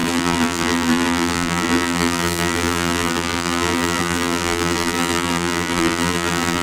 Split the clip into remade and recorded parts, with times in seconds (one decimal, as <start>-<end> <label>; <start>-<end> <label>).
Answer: 0.0-6.6 remade